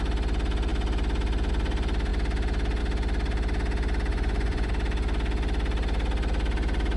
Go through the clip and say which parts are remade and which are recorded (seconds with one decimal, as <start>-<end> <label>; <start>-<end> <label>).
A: 0.0-4.1 recorded; 4.1-4.7 remade; 4.7-7.0 recorded